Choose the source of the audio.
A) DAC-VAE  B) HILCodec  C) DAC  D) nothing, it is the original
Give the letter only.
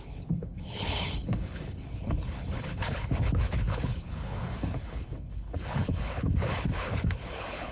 B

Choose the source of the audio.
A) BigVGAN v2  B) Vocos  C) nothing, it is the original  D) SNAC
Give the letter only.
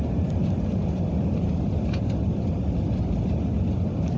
C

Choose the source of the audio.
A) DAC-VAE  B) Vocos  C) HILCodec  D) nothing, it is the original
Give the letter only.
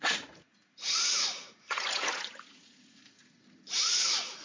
B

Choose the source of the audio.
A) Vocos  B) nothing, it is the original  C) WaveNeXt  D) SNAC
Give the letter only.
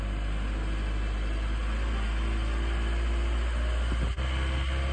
B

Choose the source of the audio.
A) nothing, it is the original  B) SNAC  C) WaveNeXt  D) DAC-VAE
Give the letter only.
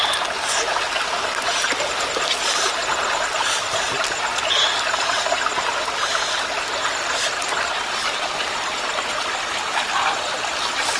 A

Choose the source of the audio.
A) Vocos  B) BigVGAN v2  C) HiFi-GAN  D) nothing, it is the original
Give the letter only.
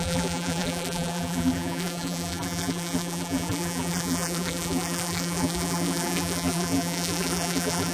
B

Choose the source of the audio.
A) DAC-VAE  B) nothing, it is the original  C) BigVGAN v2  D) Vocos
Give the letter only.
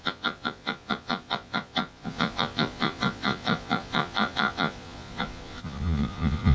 D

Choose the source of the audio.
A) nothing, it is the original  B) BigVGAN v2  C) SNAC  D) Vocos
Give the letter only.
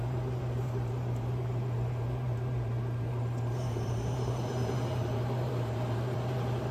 B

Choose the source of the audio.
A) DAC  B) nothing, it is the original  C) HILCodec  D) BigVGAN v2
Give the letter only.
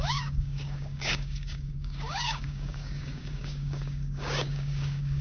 A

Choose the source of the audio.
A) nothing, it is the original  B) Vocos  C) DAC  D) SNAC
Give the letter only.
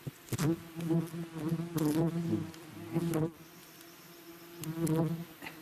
A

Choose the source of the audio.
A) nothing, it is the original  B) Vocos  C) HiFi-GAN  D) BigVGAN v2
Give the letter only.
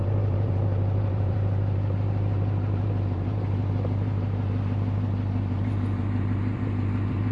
D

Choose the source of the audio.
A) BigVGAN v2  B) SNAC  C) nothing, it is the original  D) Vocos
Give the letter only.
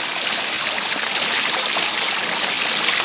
C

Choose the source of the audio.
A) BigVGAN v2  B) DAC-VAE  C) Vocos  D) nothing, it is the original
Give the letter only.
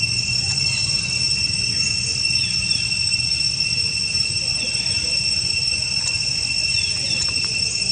C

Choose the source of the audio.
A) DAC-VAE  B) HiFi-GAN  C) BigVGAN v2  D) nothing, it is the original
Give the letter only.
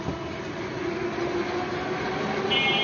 D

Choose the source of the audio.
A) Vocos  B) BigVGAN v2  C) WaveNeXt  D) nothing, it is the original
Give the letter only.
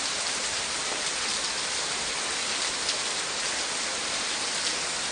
D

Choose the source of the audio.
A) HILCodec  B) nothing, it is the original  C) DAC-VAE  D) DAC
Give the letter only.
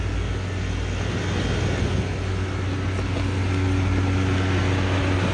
B